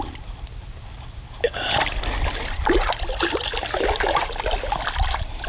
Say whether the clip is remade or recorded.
recorded